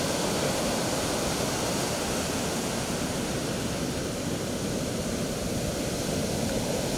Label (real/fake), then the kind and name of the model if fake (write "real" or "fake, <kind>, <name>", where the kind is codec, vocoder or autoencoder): real